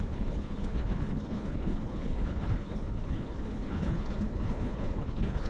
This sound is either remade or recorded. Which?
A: remade